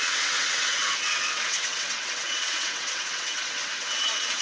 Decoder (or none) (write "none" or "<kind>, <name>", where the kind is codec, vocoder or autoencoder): vocoder, WaveNeXt